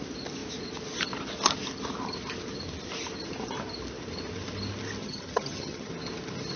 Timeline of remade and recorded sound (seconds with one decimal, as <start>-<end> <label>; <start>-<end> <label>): 0.0-5.0 recorded; 5.0-5.9 remade; 5.9-6.6 recorded